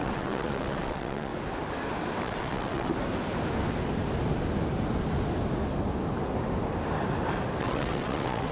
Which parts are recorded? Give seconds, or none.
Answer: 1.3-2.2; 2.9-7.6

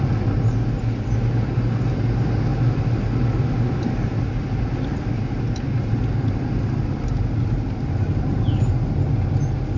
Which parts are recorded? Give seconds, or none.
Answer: 0.0-9.8

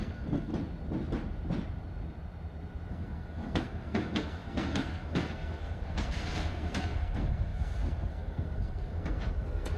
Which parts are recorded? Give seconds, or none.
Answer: 0.5-2.9